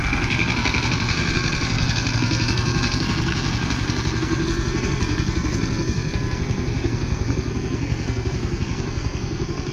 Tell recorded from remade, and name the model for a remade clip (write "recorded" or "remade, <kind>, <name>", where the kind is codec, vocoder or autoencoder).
remade, codec, SNAC